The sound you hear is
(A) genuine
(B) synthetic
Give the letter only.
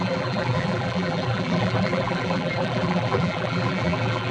B